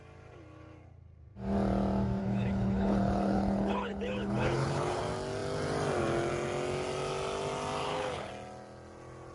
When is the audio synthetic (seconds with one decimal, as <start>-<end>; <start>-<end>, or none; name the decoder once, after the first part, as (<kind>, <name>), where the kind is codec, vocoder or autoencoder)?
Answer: 2.2-5.0 (codec, HILCodec); 7.8-8.3